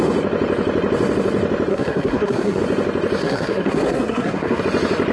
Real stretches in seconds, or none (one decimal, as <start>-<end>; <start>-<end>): 0.0-1.7; 2.6-3.2; 4.6-5.1